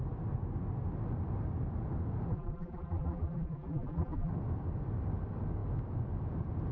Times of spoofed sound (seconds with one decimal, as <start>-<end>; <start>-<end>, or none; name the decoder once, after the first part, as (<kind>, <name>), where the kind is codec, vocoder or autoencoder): 2.3-4.3 (vocoder, BigVGAN v2)